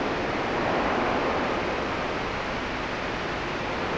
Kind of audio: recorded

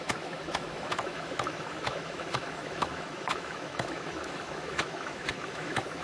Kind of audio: remade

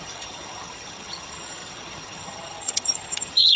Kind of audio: remade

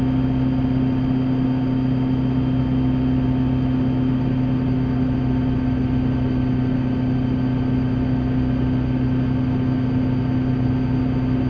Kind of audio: recorded